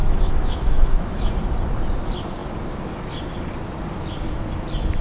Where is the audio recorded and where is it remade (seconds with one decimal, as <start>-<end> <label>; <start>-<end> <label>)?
0.0-1.3 remade; 1.3-5.0 recorded